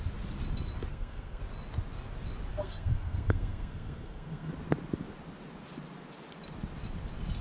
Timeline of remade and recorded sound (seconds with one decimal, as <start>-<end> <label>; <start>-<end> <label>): 0.0-0.9 recorded; 0.9-1.4 remade; 1.4-2.5 recorded; 2.5-4.5 remade; 4.5-7.4 recorded